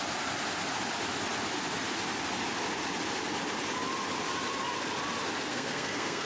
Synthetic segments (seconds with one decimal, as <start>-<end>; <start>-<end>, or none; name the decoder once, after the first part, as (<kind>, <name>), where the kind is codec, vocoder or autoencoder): 5.5-6.3 (codec, SNAC)